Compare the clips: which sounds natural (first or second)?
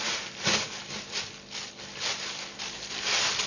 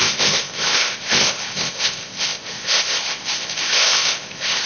first